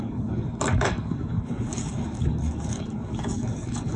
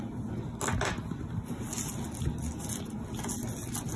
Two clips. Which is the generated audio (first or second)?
first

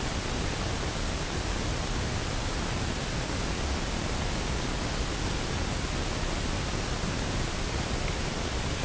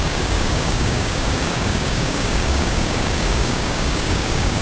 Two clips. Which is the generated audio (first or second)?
second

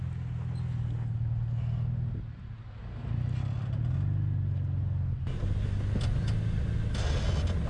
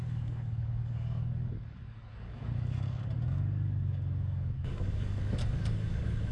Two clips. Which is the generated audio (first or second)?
second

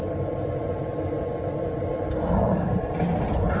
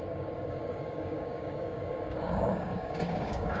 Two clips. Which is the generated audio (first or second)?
second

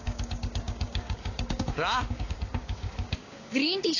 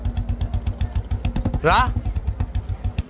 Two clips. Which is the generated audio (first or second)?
first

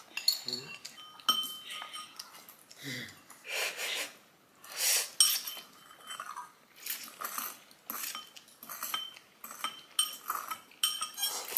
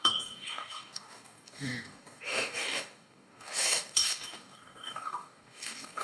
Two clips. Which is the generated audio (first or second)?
second